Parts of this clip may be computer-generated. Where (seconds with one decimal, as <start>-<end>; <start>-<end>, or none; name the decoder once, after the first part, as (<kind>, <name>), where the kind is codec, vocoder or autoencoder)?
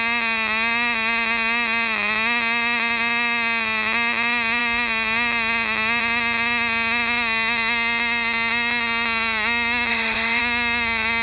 9.9-10.4 (autoencoder, DAC-VAE)